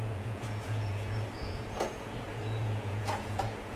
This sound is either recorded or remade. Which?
remade